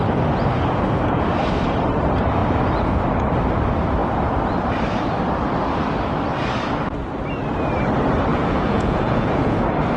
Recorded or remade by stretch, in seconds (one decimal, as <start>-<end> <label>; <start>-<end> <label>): 0.0-8.3 recorded; 8.3-9.6 remade; 9.6-10.0 recorded